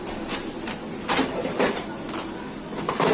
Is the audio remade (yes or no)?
no